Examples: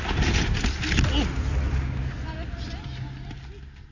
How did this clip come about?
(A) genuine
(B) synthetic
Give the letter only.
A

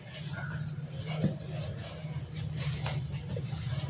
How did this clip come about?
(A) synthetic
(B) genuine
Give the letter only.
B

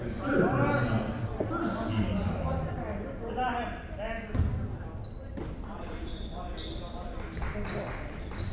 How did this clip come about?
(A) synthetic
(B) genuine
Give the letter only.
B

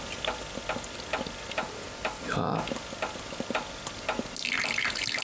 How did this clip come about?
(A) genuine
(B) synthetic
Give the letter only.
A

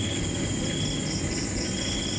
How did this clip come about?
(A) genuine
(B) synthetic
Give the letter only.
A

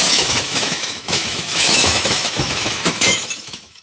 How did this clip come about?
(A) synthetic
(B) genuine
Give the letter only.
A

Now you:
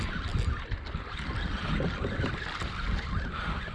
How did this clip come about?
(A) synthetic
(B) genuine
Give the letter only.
B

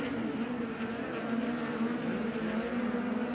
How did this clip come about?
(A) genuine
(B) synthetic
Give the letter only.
A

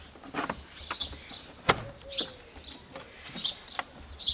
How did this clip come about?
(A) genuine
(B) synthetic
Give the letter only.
A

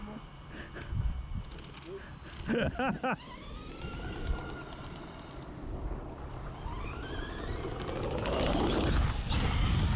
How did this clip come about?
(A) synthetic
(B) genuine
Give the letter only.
B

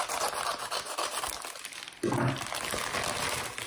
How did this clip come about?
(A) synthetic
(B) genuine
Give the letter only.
B